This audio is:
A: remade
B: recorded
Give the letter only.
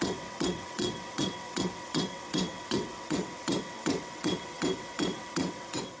A